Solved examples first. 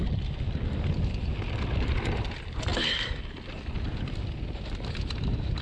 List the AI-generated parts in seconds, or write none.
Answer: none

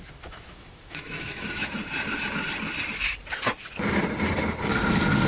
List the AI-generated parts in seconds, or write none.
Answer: 0.0-1.8 (autoencoder, DAC-VAE)